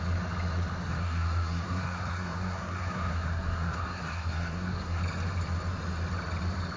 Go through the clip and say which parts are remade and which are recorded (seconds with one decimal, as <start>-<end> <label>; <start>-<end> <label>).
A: 0.0-0.9 recorded; 0.9-5.0 remade; 5.0-6.8 recorded